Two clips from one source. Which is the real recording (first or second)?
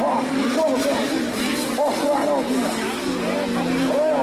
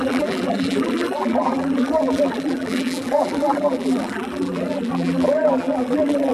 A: first